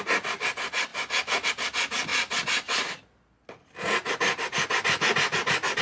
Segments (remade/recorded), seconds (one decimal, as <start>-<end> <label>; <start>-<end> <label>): 0.0-5.8 recorded